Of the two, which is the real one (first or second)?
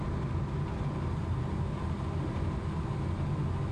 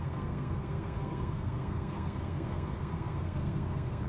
first